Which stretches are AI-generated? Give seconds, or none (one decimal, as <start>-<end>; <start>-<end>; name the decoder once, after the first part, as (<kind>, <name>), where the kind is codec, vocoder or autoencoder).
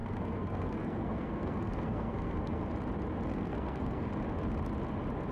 0.0-2.7 (codec, SNAC); 3.3-4.1